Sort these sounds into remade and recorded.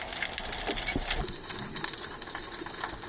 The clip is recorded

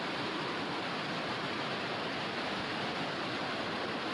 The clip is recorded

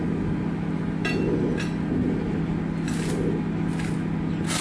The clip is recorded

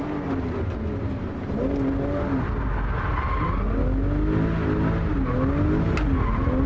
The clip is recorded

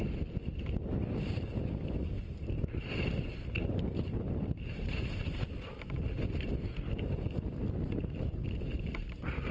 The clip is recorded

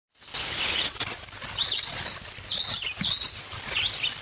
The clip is recorded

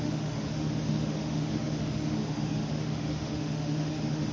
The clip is remade